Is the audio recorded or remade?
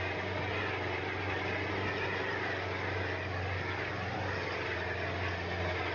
recorded